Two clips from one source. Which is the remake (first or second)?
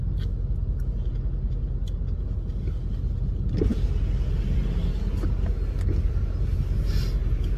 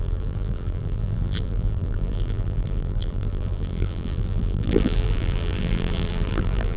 second